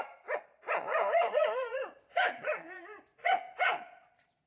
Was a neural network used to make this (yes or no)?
yes